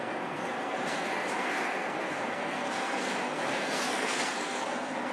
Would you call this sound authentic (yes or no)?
no